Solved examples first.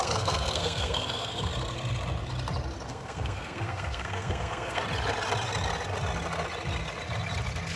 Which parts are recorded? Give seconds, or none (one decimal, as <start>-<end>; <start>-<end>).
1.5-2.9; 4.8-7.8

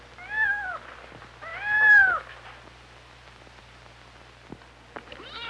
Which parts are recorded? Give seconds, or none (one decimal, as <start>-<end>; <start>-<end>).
0.0-5.5

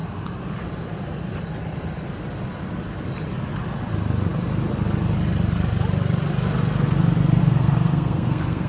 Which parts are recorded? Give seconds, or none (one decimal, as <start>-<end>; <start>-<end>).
0.0-7.4

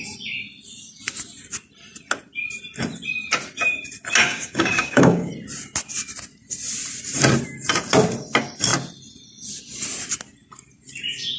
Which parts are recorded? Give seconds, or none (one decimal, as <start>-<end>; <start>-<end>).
0.0-4.2; 5.3-11.4

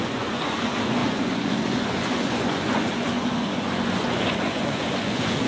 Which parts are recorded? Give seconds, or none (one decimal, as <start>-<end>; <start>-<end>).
none

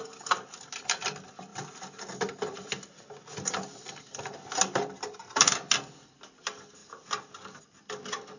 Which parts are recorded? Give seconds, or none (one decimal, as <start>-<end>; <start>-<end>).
0.0-8.4

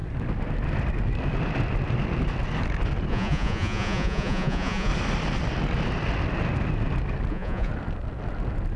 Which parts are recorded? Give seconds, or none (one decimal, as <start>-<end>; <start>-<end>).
0.0-3.1; 4.9-7.3; 7.7-8.8